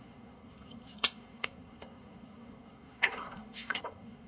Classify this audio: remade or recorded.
remade